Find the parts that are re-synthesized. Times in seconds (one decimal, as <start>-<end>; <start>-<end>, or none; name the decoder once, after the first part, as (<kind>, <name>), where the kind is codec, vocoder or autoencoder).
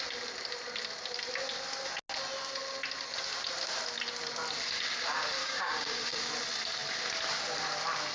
5.4-6.3 (codec, DAC)